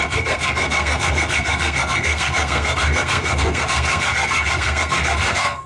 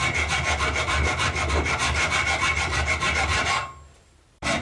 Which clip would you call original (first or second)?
second